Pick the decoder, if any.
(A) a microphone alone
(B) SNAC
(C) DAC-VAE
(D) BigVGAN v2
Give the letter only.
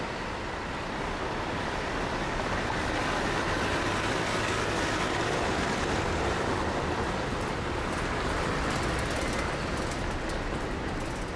A